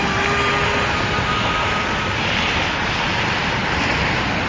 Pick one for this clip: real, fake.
real